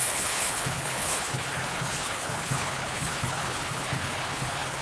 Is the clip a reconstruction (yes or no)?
yes